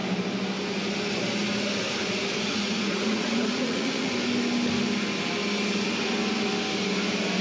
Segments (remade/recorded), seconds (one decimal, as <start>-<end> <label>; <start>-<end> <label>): 0.0-2.0 recorded; 2.0-4.1 remade; 4.1-7.4 recorded